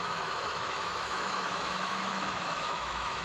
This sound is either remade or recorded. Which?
remade